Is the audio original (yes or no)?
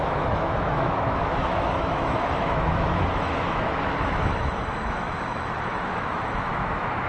no